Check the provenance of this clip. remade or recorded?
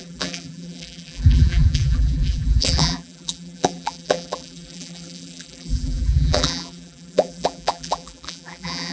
remade